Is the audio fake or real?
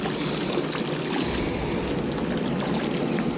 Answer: real